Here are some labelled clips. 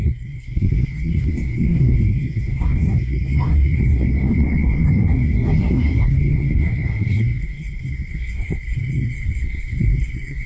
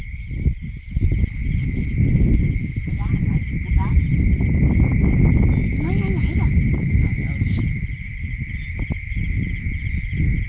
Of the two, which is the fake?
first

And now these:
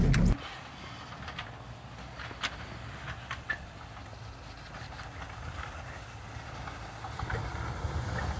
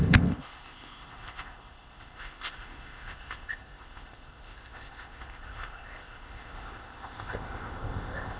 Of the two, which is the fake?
second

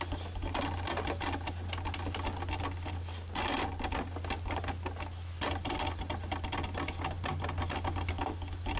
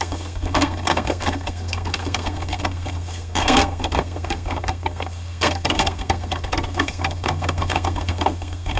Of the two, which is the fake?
second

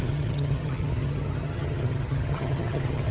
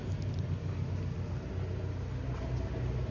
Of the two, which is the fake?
first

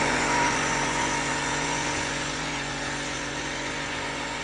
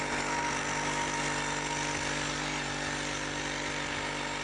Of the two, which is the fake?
first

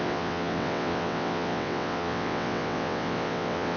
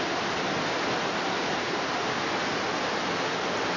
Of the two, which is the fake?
first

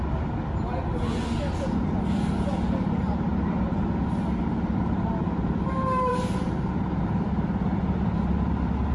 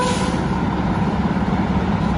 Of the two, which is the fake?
second